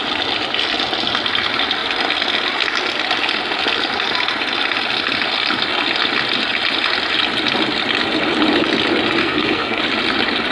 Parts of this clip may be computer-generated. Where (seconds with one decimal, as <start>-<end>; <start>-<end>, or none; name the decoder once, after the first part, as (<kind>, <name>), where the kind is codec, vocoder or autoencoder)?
9.2-9.8 (codec, SNAC)